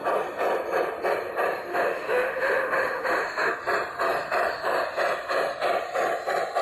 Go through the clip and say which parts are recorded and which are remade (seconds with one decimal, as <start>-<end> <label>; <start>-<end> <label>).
0.0-1.7 recorded; 1.7-3.5 remade; 3.5-6.6 recorded